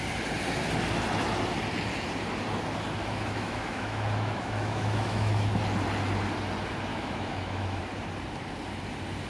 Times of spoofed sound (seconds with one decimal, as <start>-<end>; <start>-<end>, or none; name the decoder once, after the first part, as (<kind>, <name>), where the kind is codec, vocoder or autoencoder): 3.0-5.6 (autoencoder, DAC-VAE); 6.9-7.8